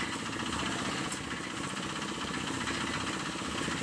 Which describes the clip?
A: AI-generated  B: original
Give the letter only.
B